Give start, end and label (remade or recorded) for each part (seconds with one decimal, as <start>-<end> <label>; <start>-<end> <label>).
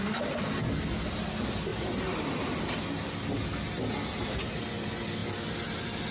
0.0-6.1 recorded